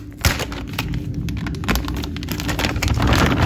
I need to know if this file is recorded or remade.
recorded